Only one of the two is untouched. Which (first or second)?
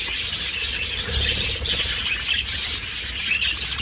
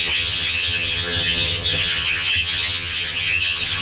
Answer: first